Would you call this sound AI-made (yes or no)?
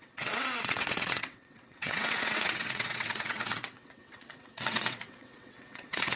yes